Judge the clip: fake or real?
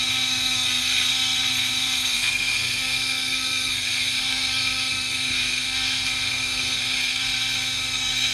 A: fake